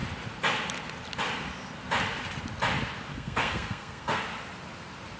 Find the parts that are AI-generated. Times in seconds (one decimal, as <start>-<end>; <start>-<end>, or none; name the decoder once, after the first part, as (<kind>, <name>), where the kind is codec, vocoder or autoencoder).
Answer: 3.1-4.2 (codec, SNAC)